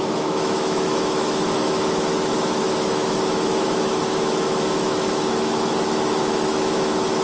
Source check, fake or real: fake